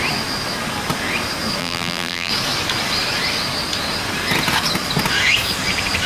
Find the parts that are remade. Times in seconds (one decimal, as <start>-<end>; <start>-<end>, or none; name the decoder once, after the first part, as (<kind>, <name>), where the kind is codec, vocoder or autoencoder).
1.6-2.3 (vocoder, BigVGAN v2)